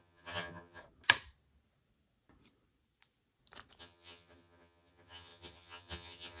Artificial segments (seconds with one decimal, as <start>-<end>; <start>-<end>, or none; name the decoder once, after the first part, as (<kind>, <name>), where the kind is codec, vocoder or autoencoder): 0.0-0.8 (vocoder, HiFi-GAN); 3.8-6.4